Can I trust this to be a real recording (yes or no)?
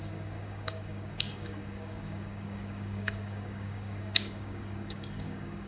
no